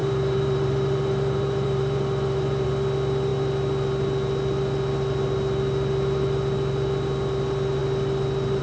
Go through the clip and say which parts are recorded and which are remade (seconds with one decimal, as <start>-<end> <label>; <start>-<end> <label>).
0.0-2.7 remade; 2.7-8.6 recorded

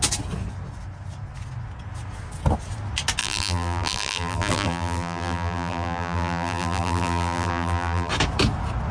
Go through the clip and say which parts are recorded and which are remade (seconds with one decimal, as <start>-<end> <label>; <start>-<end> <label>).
0.0-3.2 recorded; 3.2-8.1 remade; 8.1-8.9 recorded

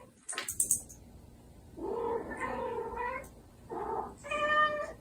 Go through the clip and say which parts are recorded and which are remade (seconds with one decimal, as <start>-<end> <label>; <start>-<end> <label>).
0.0-5.0 recorded

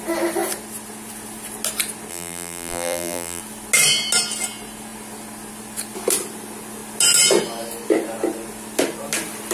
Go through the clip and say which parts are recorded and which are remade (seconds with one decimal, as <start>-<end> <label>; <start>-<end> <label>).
0.0-2.1 recorded; 2.1-3.4 remade; 3.4-9.5 recorded